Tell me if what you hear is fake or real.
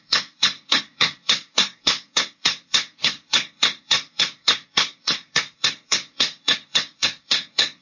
fake